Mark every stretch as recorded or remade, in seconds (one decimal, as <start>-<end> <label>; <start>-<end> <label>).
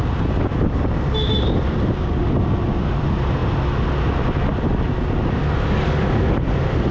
0.0-6.9 recorded